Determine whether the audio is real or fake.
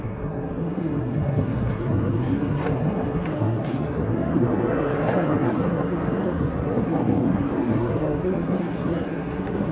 fake